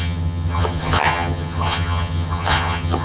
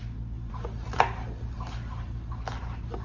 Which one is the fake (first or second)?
first